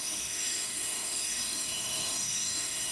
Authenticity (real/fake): fake